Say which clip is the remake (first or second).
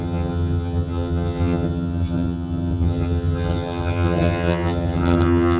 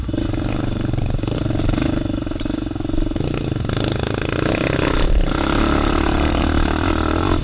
first